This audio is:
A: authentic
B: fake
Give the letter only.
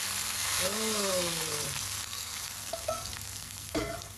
B